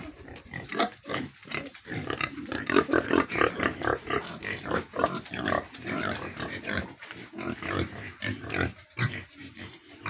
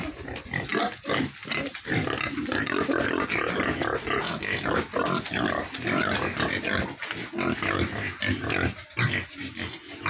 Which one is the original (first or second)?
second